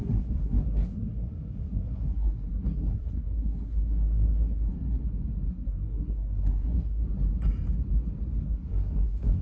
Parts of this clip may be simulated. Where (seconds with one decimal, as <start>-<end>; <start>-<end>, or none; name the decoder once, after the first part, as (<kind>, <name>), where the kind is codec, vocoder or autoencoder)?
0.0-4.7 (codec, SNAC); 5.5-7.0; 8.4-9.4